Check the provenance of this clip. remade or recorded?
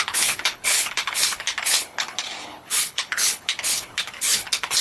remade